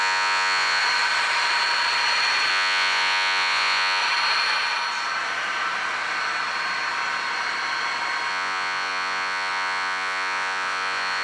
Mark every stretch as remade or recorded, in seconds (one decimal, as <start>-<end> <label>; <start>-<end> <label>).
0.0-0.8 remade; 0.8-2.5 recorded; 2.5-4.0 remade; 4.0-8.3 recorded; 8.3-11.2 remade